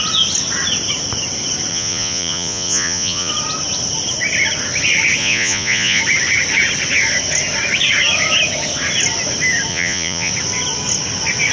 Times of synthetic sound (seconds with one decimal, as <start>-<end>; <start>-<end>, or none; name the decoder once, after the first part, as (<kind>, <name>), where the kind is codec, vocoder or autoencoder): 1.7-3.3 (vocoder, Vocos); 5.2-6.0; 9.7-10.3